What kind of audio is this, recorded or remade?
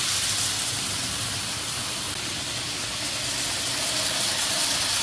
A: recorded